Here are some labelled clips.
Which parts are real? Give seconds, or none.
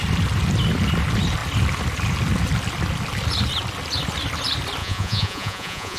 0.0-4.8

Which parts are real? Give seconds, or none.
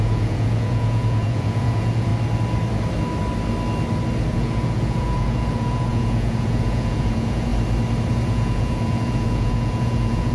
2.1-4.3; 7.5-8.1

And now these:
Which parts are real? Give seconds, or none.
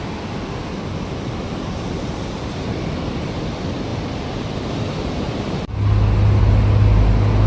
0.0-7.5